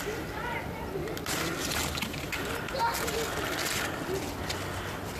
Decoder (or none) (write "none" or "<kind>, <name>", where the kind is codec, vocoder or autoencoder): none